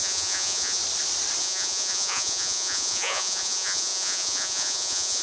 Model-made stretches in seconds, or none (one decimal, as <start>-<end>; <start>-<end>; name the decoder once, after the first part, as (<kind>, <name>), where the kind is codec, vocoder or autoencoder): 0.0-0.8 (vocoder, Vocos); 1.4-5.2